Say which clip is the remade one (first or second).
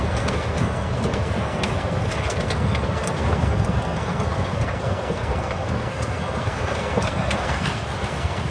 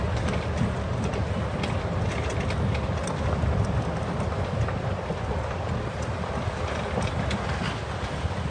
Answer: first